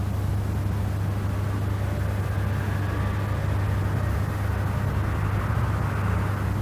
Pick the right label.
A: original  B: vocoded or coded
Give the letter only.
A